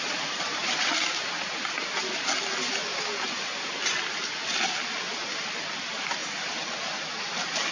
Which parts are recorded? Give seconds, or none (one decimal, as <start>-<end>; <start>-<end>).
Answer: 0.0-7.7